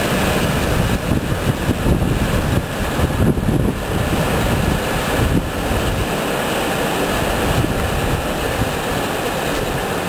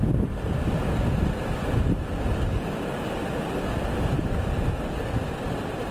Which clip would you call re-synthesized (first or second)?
second